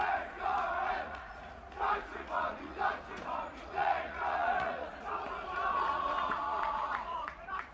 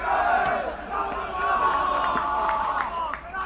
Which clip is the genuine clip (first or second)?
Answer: second